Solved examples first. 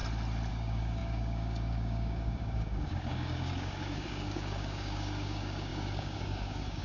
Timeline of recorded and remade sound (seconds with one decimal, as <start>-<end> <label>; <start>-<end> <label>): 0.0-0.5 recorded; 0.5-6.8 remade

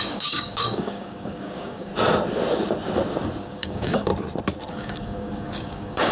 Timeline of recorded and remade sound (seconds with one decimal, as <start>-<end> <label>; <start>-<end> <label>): 0.0-1.9 remade; 1.9-3.4 recorded; 3.4-4.1 remade; 4.1-4.7 recorded; 4.7-6.1 remade

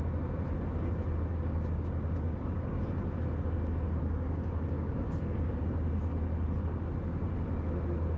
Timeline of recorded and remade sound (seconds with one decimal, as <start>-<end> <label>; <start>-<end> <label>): 0.0-1.3 recorded; 1.3-2.8 remade; 2.8-4.0 recorded; 4.0-5.6 remade; 5.6-8.2 recorded

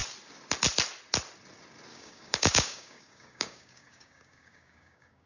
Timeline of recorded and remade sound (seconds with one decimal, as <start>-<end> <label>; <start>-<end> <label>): 0.0-1.9 recorded; 1.9-5.3 remade

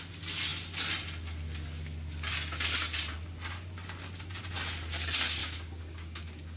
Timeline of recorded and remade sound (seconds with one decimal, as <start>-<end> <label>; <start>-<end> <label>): 0.0-5.4 recorded; 5.4-6.6 remade